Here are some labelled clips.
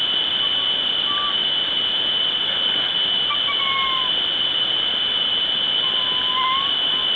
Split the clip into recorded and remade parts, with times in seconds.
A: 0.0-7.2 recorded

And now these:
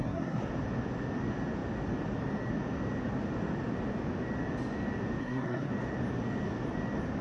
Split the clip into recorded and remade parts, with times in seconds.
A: 0.0-0.5 remade; 0.5-5.2 recorded; 5.2-5.7 remade; 5.7-7.2 recorded

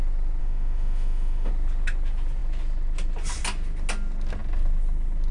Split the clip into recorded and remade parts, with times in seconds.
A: 0.0-0.4 recorded; 0.4-1.5 remade; 1.5-5.3 recorded

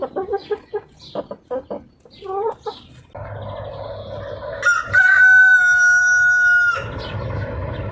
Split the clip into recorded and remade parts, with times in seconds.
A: 0.0-7.9 recorded

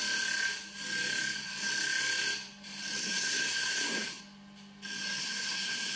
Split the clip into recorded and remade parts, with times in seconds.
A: 0.0-3.0 recorded; 3.0-4.2 remade; 4.2-5.2 recorded; 5.2-6.0 remade